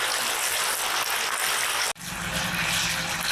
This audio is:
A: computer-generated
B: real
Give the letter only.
B